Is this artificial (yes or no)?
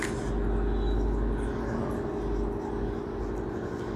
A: no